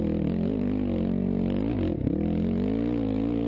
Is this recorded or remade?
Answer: recorded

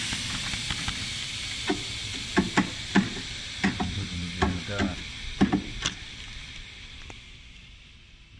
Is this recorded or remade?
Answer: recorded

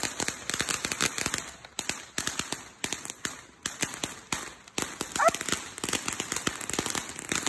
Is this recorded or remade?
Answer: recorded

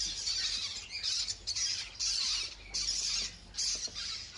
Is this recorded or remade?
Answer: recorded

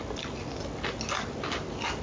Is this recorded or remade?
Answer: recorded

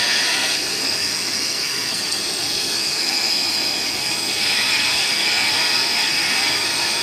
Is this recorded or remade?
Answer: remade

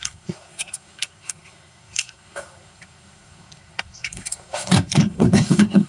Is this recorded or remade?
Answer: remade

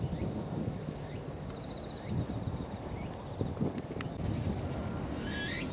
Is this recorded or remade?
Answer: recorded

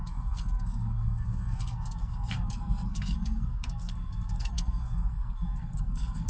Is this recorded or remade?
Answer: remade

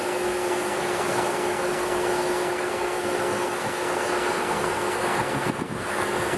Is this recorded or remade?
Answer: remade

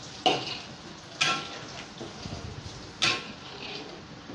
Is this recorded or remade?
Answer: recorded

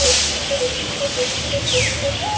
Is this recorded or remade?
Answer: recorded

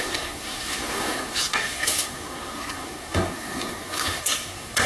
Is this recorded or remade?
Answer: remade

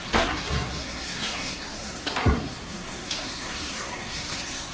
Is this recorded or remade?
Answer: remade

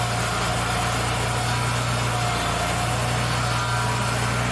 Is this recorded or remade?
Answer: recorded